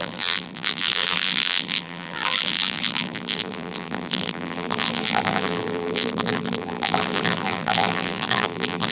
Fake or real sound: fake